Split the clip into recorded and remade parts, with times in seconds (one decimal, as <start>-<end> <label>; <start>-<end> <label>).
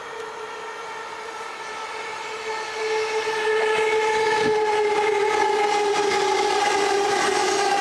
0.0-7.8 recorded